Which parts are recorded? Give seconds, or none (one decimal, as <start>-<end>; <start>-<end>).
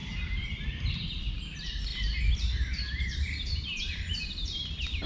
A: 0.9-1.9